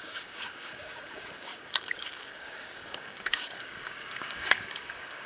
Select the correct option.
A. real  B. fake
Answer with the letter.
B